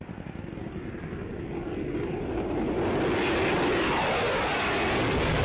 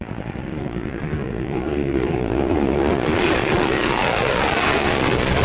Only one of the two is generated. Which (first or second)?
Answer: second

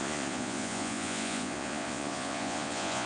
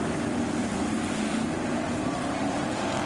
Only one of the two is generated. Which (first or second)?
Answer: first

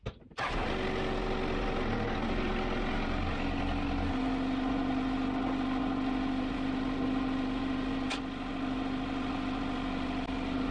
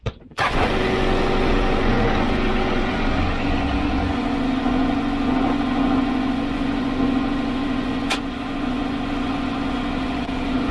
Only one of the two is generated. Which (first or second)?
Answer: second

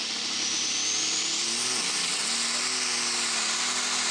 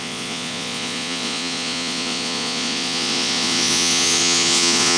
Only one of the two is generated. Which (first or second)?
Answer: second